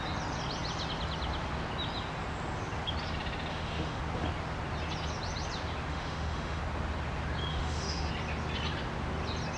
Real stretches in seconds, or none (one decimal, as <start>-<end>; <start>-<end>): 0.0-3.5; 4.0-5.9; 6.6-7.5; 8.1-9.6